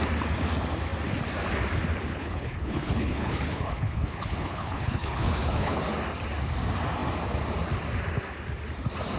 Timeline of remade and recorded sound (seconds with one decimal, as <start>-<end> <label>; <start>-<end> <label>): 0.0-2.1 recorded; 2.1-5.8 remade; 5.8-9.2 recorded